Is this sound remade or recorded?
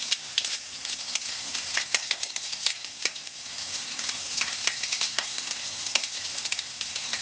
remade